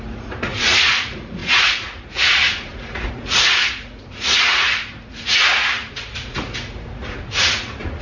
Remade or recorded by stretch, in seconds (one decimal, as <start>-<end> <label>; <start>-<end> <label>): 0.0-8.0 remade